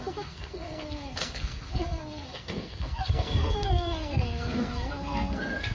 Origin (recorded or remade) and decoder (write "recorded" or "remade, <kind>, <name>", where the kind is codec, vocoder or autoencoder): remade, codec, SNAC